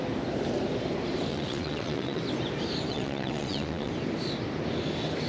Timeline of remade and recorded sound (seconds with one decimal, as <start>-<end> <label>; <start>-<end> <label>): 0.0-1.3 recorded; 1.3-2.2 remade; 2.2-2.9 recorded; 2.9-3.9 remade; 3.9-5.3 recorded